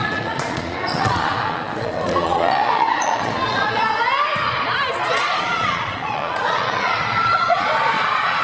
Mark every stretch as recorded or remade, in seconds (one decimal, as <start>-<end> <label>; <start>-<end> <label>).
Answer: 0.0-3.9 remade; 3.9-5.0 recorded; 5.0-8.4 remade